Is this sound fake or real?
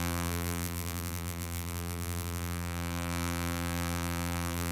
fake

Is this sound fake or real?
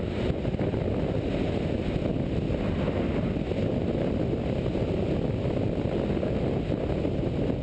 real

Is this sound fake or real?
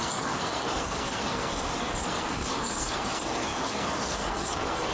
fake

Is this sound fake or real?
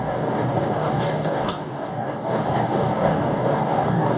fake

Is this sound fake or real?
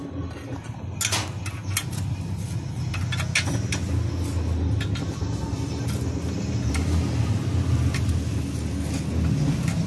real